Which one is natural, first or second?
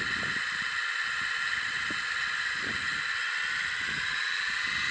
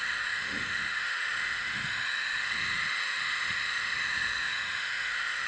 first